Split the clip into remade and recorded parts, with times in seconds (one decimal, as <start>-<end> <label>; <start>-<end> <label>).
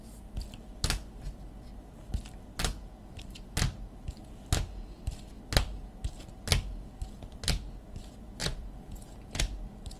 0.0-8.4 recorded; 8.4-9.4 remade; 9.4-10.0 recorded